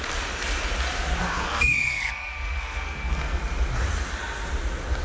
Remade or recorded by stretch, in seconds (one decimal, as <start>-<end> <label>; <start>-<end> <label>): 0.0-1.2 recorded; 1.2-3.4 remade; 3.4-5.0 recorded